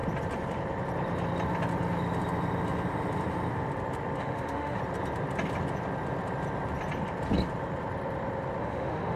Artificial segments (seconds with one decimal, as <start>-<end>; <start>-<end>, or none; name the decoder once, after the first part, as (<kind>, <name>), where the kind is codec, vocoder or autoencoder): 4.2-4.8 (autoencoder, DAC-VAE); 8.6-9.2